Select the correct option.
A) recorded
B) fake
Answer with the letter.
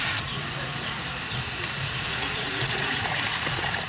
B